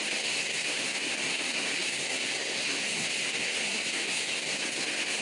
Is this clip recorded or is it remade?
remade